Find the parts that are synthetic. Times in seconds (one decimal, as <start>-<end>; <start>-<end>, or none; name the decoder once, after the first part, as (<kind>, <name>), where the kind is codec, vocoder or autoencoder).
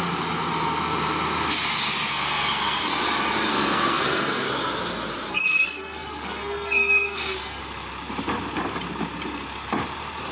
2.1-3.0 (codec, SNAC); 3.5-4.5; 5.3-7.6